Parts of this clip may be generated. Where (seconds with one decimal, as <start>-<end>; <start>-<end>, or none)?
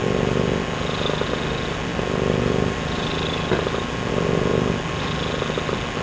none